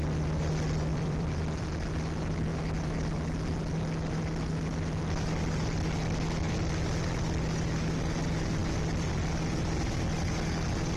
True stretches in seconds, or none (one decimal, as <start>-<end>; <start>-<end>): 0.0-0.9; 1.6-11.0